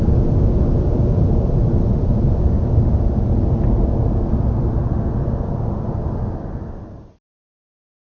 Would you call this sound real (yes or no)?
yes